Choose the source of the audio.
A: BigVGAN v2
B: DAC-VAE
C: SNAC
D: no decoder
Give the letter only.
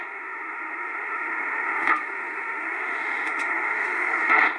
B